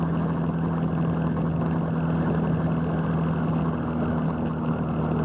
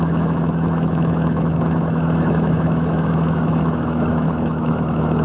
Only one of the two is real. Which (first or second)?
first